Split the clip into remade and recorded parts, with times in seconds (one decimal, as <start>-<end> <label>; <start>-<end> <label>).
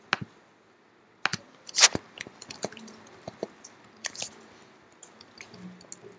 0.0-1.3 recorded; 1.3-4.2 remade; 4.2-6.2 recorded